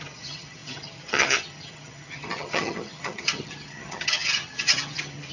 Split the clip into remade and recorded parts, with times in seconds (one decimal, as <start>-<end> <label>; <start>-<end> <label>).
0.0-5.3 remade